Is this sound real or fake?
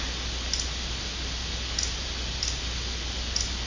real